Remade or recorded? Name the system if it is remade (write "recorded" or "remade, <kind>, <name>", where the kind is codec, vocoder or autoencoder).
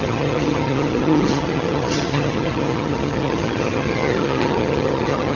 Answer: remade, vocoder, HiFi-GAN